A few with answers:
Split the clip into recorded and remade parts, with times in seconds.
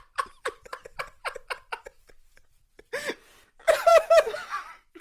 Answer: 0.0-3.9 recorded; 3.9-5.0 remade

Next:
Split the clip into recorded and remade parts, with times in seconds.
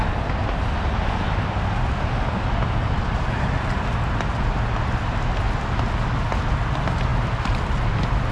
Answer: 0.0-8.3 recorded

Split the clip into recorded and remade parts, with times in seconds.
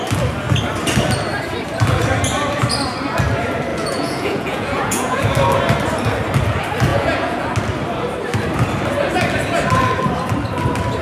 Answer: 0.0-3.7 recorded; 3.7-5.2 remade; 5.2-6.9 recorded; 6.9-7.4 remade; 7.4-11.0 recorded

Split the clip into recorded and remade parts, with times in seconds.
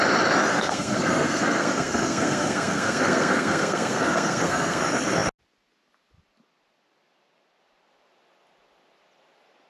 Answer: 0.0-0.5 recorded; 0.5-4.8 remade; 4.8-9.7 recorded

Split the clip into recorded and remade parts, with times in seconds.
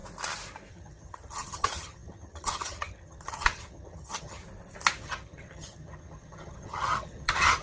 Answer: 0.0-0.7 recorded; 0.7-4.4 remade; 4.4-5.0 recorded; 5.0-7.6 remade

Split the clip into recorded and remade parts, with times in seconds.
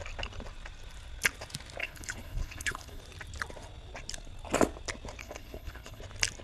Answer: 0.0-1.8 recorded; 1.8-3.0 remade; 3.0-5.2 recorded; 5.2-6.0 remade; 6.0-6.4 recorded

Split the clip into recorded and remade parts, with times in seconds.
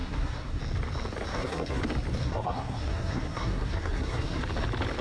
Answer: 0.0-0.6 remade; 0.6-1.3 recorded; 1.3-1.8 remade; 1.8-2.2 recorded; 2.2-4.4 remade; 4.4-5.0 recorded